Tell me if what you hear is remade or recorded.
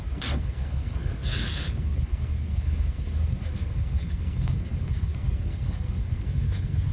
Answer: remade